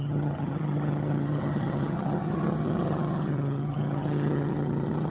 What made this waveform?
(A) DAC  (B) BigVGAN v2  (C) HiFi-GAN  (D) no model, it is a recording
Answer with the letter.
C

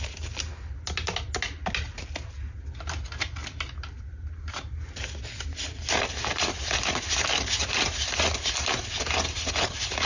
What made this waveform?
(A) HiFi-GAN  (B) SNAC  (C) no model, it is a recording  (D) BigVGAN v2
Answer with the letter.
C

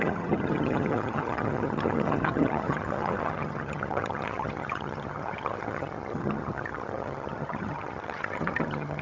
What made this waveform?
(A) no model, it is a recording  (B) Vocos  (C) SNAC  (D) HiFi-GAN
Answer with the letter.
D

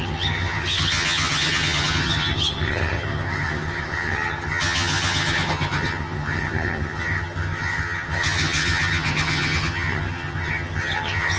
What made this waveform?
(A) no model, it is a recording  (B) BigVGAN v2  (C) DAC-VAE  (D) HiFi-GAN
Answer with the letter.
D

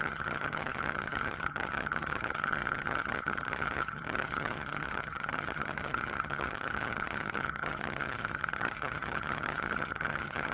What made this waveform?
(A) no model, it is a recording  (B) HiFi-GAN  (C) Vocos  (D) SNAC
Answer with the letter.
B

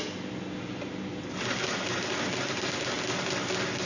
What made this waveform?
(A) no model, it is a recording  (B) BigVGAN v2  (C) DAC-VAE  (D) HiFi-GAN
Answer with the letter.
A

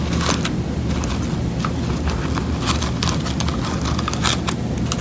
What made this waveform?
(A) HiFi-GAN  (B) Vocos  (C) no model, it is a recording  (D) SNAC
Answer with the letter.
C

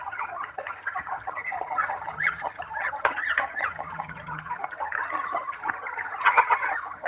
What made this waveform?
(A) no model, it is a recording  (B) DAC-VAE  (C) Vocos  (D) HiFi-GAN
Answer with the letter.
D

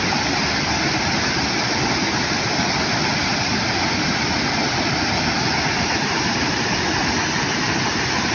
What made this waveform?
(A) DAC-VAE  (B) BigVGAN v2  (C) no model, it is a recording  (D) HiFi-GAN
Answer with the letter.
C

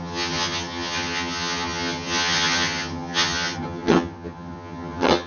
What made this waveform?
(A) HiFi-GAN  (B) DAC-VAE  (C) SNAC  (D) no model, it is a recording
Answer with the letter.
A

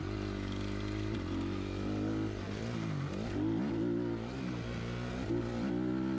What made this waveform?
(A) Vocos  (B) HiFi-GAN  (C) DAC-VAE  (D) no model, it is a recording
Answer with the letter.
D